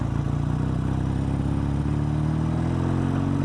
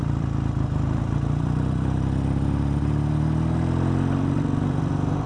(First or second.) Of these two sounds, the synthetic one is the second